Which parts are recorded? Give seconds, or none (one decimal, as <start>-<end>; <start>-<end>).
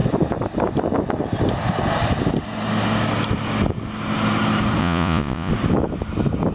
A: 0.0-4.8; 5.5-6.5